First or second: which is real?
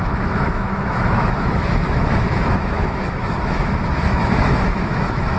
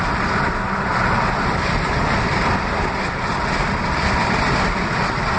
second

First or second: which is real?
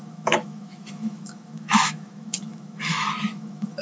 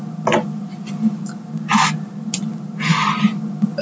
second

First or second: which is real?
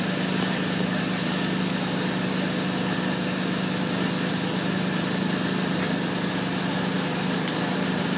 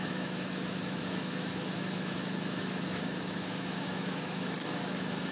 first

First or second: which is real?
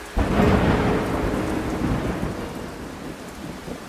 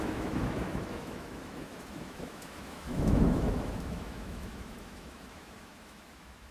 first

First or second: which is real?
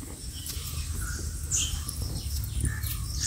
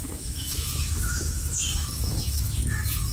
first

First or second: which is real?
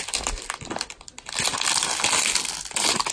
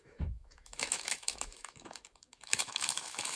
first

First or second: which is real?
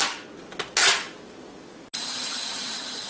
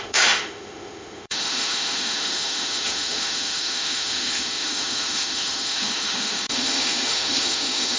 first